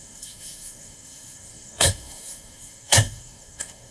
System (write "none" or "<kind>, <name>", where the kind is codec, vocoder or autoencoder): codec, SNAC